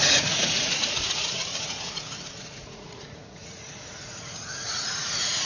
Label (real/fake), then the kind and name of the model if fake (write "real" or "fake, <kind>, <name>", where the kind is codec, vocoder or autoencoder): fake, vocoder, Vocos